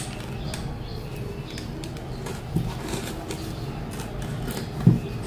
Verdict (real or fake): real